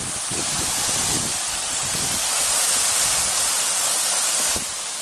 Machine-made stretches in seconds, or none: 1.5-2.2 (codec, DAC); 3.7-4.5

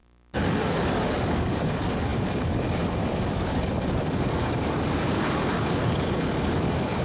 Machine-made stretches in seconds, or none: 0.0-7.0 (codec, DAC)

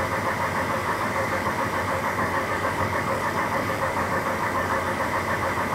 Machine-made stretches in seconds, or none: 0.8-1.5 (codec, DAC); 2.0-5.0

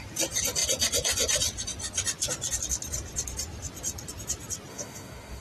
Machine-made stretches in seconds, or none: 4.7-5.4 (codec, DAC)

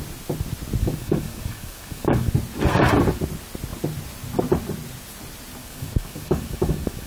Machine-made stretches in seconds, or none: 0.8-2.3 (codec, DAC); 5.6-7.1

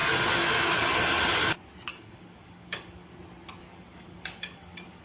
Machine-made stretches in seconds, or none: 1.9-3.1 (codec, DAC); 3.6-5.0

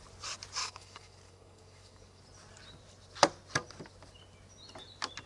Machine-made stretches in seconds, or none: 0.6-2.2 (codec, DAC)